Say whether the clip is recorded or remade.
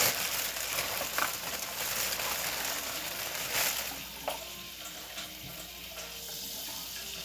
recorded